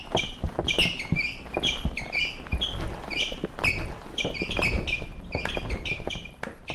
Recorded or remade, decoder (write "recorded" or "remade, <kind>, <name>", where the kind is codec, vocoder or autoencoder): recorded